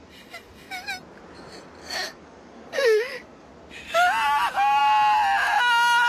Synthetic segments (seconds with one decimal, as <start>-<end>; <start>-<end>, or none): 1.8-3.5